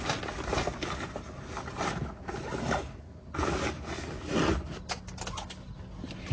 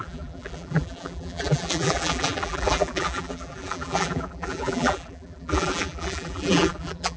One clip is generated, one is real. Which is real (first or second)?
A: first